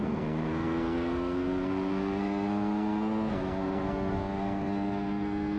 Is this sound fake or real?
fake